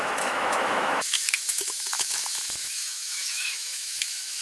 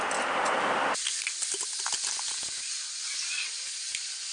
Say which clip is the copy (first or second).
first